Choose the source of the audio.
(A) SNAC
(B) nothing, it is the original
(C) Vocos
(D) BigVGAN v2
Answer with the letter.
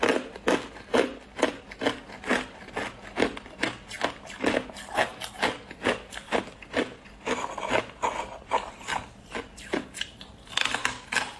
B